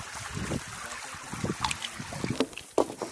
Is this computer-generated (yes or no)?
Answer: no